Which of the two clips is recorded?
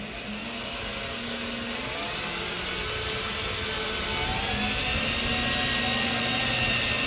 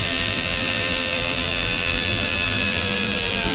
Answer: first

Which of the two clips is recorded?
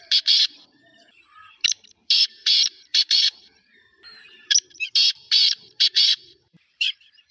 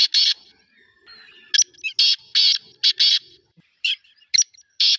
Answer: second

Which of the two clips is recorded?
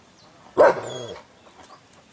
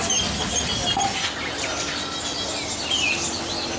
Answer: second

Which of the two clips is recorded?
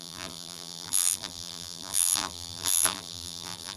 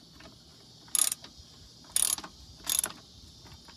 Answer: second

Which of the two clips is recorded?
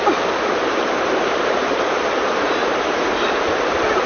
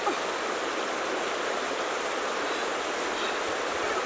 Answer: second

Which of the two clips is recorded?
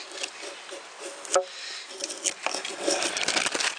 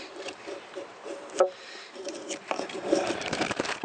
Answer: first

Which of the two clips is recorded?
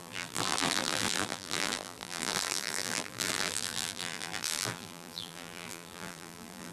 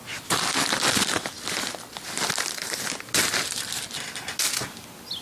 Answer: second